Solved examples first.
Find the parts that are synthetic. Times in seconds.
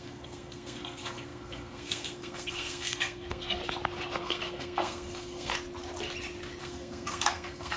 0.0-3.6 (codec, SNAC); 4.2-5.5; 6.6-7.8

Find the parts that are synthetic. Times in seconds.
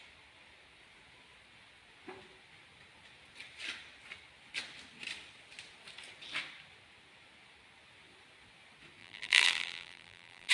9.0-10.5 (vocoder, BigVGAN v2)